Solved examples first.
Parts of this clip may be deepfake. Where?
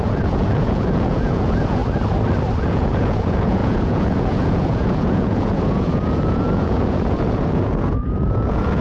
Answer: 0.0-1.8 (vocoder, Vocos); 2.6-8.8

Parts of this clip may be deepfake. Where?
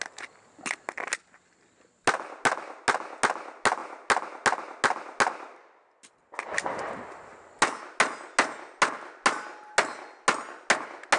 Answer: none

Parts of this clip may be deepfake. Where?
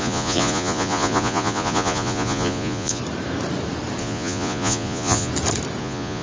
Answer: 0.0-3.0 (vocoder, Vocos); 4.0-5.3; 5.8-6.2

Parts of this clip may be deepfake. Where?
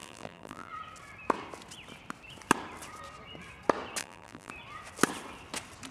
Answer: 0.0-0.7 (vocoder, BigVGAN v2); 4.0-4.5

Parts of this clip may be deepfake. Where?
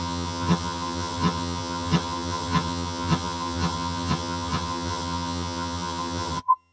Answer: 0.0-6.7 (vocoder, HiFi-GAN)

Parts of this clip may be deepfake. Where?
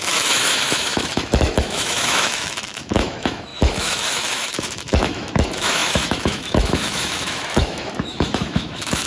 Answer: 0.0-9.1 (autoencoder, DAC-VAE)